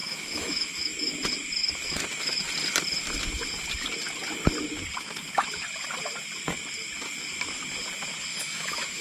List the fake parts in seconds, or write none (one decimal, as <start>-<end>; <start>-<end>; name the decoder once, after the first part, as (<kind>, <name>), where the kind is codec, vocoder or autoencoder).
0.0-1.1 (autoencoder, DAC-VAE); 1.6-2.4; 8.3-9.0